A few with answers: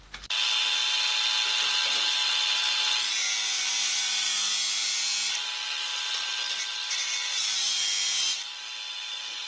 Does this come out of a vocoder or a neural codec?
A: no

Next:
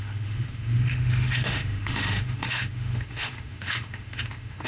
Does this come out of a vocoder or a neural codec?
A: yes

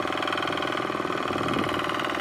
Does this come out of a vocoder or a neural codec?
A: no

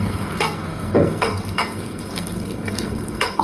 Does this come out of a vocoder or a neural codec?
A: yes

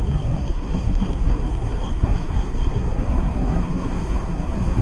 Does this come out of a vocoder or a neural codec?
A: yes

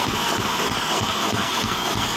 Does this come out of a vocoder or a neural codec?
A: yes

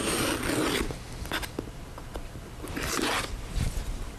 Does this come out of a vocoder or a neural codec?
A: no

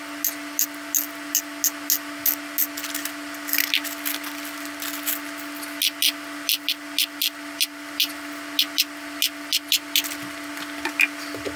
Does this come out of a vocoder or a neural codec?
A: no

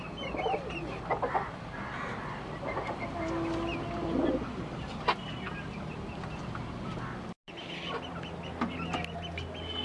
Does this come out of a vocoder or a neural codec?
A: no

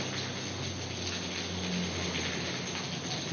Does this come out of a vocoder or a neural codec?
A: no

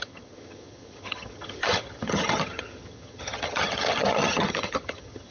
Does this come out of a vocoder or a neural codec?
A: yes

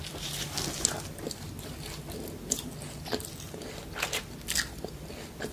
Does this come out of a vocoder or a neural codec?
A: no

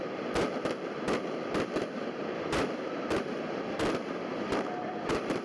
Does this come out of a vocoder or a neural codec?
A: yes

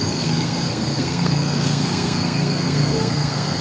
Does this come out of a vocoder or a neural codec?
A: yes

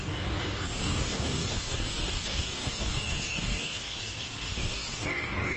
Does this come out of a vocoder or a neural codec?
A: yes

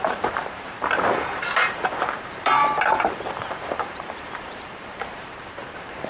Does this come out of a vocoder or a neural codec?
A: yes